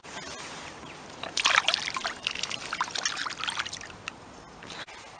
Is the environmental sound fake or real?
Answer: real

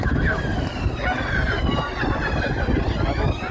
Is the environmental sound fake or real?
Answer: real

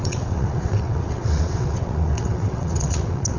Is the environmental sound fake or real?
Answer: fake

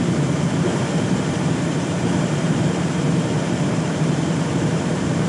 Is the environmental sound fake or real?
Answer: fake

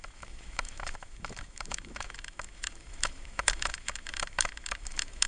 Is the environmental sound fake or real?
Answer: fake